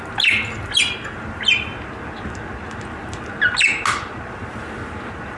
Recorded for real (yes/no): yes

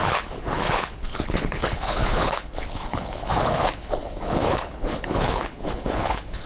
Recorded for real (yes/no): no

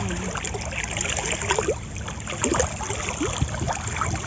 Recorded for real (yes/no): yes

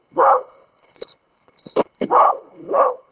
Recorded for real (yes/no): no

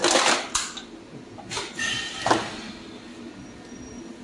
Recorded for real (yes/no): yes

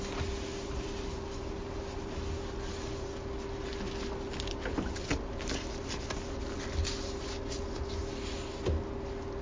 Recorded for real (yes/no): yes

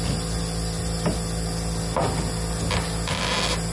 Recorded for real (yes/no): yes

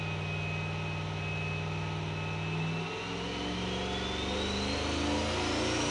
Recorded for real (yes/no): yes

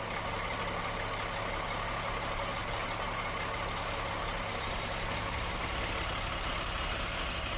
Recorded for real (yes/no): yes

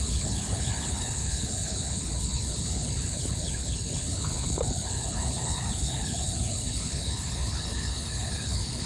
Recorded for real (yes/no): no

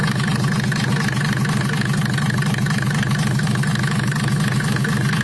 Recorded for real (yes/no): yes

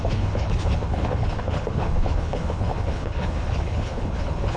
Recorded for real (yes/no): no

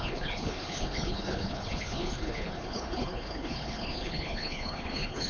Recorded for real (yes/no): no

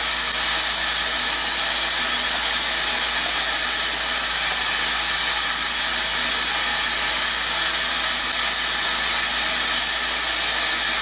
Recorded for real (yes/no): yes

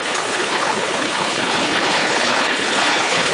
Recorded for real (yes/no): no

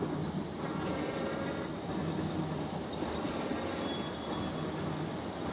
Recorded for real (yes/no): yes